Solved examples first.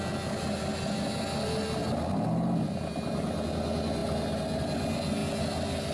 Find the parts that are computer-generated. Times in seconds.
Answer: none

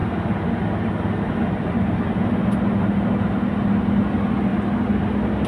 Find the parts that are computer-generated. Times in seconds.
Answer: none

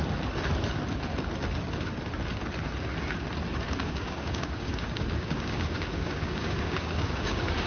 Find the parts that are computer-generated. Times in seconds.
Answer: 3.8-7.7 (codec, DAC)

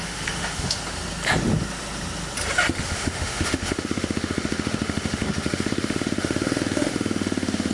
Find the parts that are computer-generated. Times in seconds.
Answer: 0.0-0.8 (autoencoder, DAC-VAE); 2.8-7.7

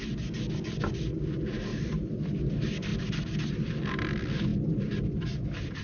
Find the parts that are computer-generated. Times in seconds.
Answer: 1.7-2.5 (vocoder, BigVGAN v2); 2.9-3.7; 4.5-5.8

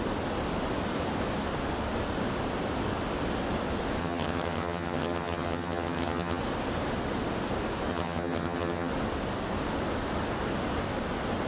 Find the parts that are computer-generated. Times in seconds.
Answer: 4.0-6.4 (vocoder, HiFi-GAN); 7.9-8.9

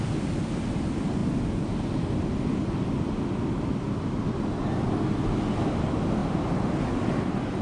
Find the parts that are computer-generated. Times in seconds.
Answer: none